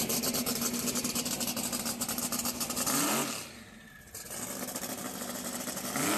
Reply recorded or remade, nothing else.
recorded